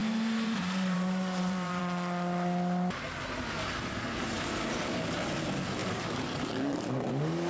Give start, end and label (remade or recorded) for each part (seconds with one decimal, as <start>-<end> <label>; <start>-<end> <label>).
0.0-1.8 remade; 1.8-4.1 recorded; 4.1-4.8 remade; 4.8-5.8 recorded; 5.8-6.5 remade; 6.5-7.5 recorded

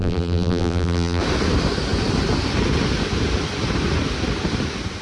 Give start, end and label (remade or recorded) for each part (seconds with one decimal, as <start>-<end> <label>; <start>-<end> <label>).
0.0-1.2 remade; 1.2-5.0 recorded

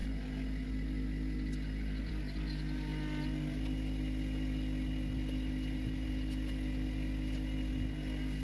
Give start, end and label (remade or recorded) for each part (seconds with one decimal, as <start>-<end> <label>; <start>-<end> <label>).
0.0-8.4 recorded

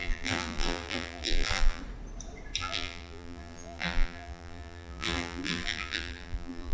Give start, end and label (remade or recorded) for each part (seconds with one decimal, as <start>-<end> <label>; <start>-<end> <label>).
0.0-1.8 remade; 1.8-2.6 recorded; 2.6-6.7 remade